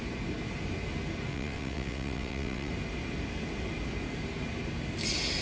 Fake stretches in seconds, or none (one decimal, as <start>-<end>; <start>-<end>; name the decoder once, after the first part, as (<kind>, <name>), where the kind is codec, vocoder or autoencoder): 1.3-2.7 (vocoder, WaveNeXt)